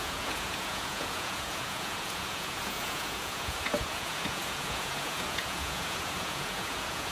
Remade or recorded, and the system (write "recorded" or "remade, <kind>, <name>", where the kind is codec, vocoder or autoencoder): remade, vocoder, Vocos